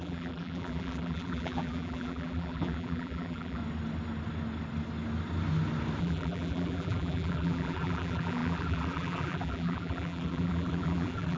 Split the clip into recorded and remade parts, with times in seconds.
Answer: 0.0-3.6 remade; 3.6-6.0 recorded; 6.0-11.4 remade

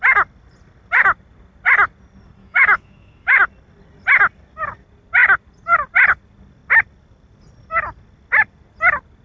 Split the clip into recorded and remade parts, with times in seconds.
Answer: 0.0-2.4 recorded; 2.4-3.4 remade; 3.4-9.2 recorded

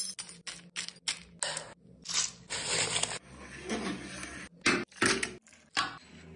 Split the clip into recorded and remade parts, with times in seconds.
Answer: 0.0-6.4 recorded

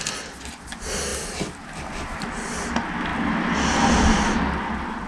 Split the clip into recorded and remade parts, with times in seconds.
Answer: 0.0-5.1 recorded

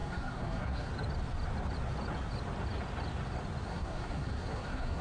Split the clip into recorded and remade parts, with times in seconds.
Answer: 0.0-0.9 remade; 0.9-3.7 recorded; 3.7-5.0 remade

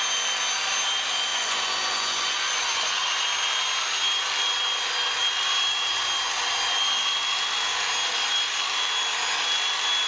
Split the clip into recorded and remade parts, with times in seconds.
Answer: 0.0-1.3 recorded; 1.3-2.6 remade; 2.6-10.1 recorded

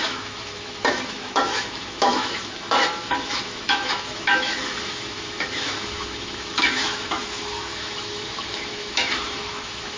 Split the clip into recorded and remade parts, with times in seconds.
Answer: 0.0-10.0 remade